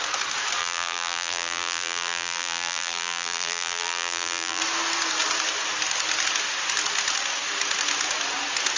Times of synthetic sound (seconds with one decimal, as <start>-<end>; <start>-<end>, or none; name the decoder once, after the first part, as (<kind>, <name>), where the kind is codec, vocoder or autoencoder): 0.6-4.6 (vocoder, BigVGAN v2)